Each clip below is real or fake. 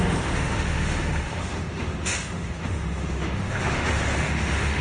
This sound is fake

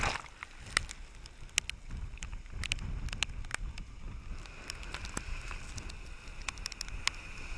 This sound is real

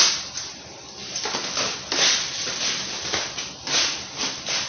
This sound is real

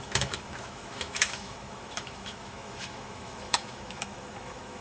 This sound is fake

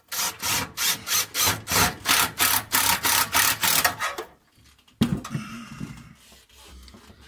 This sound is real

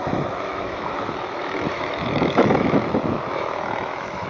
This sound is fake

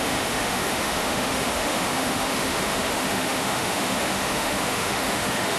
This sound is fake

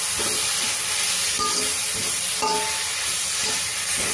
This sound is real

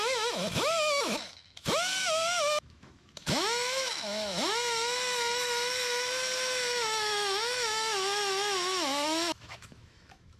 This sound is fake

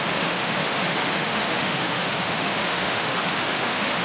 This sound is fake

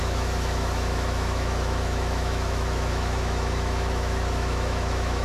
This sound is fake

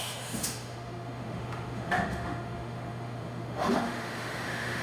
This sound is fake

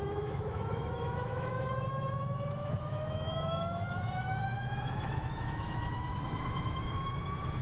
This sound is fake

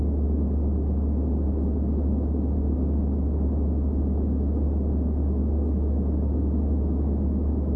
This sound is real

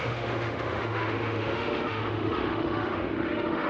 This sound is fake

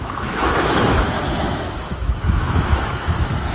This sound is fake